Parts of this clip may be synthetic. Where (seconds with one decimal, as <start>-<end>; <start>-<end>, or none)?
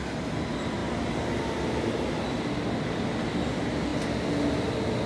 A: none